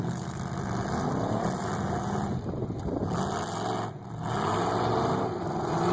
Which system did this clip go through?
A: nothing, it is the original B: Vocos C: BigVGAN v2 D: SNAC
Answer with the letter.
A